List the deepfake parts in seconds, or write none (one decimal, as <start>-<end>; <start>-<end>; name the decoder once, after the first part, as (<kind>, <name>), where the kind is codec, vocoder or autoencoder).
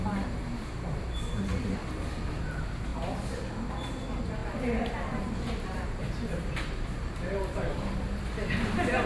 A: 0.0-1.5 (vocoder, BigVGAN v2); 2.4-2.9; 3.7-9.1